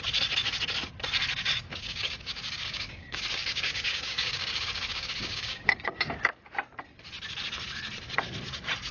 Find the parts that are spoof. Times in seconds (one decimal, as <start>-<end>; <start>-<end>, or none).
1.7-6.5